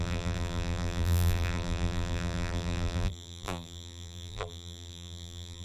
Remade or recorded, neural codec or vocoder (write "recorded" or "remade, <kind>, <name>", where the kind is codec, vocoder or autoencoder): remade, vocoder, BigVGAN v2